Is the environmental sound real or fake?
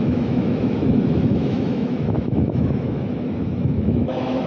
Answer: fake